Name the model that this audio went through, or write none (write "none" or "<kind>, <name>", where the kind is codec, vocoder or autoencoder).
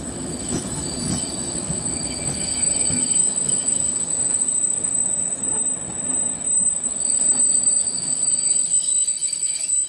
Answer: autoencoder, DAC-VAE